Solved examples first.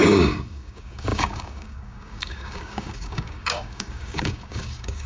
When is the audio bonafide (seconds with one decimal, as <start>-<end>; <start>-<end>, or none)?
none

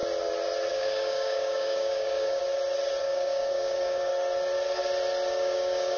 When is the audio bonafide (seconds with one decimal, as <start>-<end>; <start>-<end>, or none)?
0.0-0.7; 2.4-3.0; 4.1-5.3

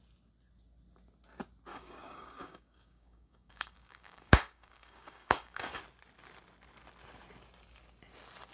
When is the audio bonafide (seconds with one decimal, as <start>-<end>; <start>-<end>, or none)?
0.0-1.7; 5.8-8.5